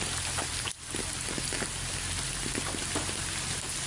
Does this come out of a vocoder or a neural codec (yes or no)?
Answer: no